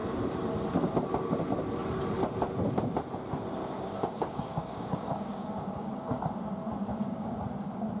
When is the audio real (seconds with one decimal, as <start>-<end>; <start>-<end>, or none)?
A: 0.0-3.6; 6.2-6.9; 7.4-8.0